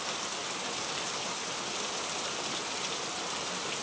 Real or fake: fake